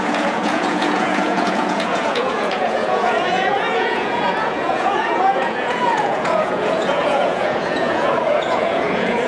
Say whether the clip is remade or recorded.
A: remade